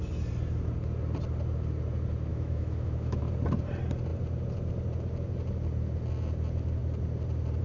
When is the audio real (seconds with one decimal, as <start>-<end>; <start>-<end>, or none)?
0.0-2.3; 3.2-7.6